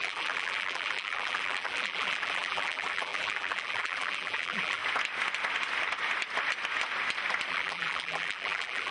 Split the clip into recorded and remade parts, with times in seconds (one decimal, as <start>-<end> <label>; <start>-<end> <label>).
0.0-4.8 remade; 4.8-7.5 recorded; 7.5-8.9 remade